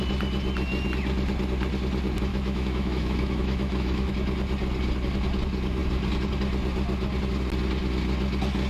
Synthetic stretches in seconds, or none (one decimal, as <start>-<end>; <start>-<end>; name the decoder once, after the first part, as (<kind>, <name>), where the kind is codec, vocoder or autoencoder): 2.3-4.1 (autoencoder, DAC-VAE)